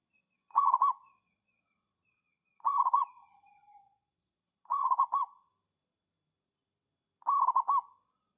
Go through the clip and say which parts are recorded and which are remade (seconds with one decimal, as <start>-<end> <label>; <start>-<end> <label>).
0.0-5.5 remade; 5.5-8.0 recorded; 8.0-8.4 remade